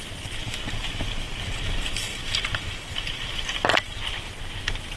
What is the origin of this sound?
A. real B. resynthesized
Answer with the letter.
A